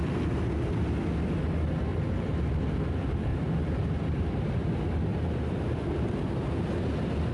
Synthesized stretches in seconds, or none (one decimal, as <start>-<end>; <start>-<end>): 1.9-2.6; 3.3-4.4; 5.1-7.3